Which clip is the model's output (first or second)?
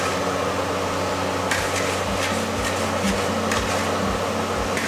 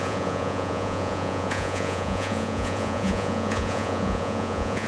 second